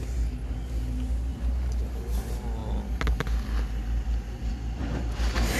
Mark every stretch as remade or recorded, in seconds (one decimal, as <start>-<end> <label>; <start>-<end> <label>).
0.0-5.6 recorded